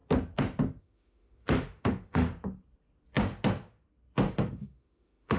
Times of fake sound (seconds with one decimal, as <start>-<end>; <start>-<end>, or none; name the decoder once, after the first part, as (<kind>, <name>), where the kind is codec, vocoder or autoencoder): 0.8-2.3 (autoencoder, DAC-VAE); 4.3-5.4